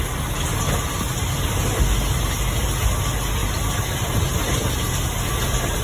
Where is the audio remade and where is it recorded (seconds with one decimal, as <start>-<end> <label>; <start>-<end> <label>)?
0.0-3.4 recorded; 3.4-4.2 remade; 4.2-5.8 recorded